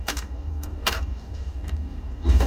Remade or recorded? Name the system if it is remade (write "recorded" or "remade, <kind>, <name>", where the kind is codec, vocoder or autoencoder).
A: remade, codec, DAC